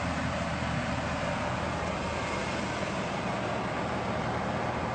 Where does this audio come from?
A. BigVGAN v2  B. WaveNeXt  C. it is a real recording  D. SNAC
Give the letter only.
C